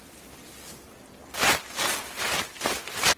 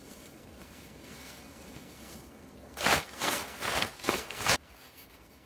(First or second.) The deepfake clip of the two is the second